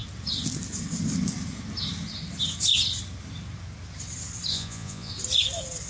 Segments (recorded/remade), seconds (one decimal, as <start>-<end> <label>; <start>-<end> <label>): 0.0-4.5 recorded; 4.5-5.1 remade; 5.1-5.9 recorded